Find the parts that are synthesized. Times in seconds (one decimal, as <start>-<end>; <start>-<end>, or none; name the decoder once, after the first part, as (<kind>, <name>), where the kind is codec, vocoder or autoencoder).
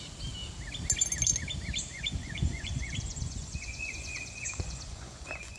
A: 1.9-5.6 (vocoder, Vocos)